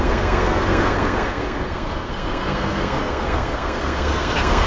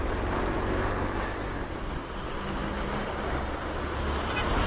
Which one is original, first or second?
second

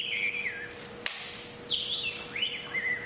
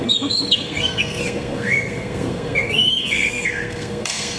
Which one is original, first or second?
first